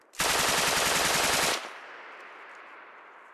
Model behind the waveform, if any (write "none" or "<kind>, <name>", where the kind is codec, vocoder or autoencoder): vocoder, BigVGAN v2